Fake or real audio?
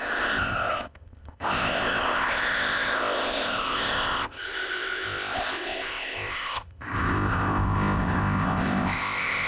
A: fake